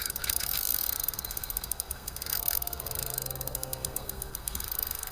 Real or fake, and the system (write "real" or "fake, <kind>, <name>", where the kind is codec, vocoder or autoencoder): fake, codec, SNAC